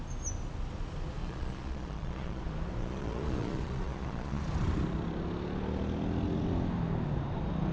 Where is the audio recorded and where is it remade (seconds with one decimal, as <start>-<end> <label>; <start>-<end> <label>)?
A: 0.0-1.2 recorded; 1.2-2.4 remade; 2.4-2.8 recorded; 2.8-4.4 remade; 4.4-7.7 recorded